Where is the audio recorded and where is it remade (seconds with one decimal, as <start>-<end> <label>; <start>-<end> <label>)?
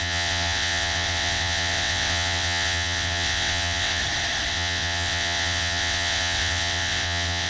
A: 0.0-4.0 remade; 4.0-4.5 recorded; 4.5-7.5 remade